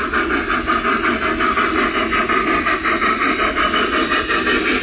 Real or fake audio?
real